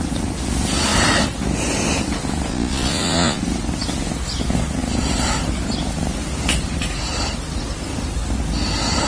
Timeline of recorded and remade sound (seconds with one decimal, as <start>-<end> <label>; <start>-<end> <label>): 0.0-2.5 recorded; 2.5-3.4 remade; 3.4-9.1 recorded